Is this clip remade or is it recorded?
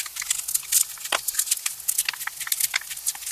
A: recorded